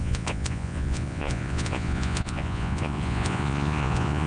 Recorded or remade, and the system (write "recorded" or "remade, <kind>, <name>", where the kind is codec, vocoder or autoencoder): remade, vocoder, Vocos